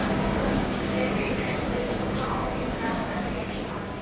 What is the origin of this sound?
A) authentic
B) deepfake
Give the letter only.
B